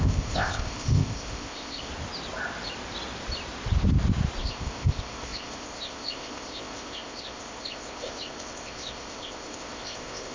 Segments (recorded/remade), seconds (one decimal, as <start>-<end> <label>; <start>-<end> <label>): 0.0-1.9 remade; 1.9-4.4 recorded; 4.4-10.3 remade